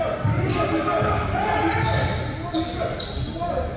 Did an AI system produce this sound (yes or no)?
no